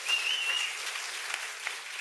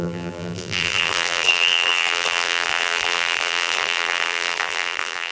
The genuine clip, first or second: first